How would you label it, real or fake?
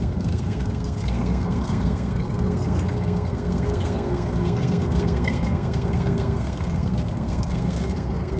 fake